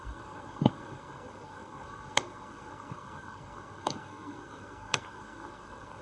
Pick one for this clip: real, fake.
fake